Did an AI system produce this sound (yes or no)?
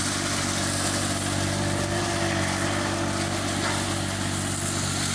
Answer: no